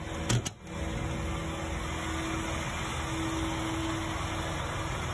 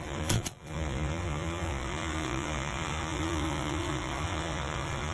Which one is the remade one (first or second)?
second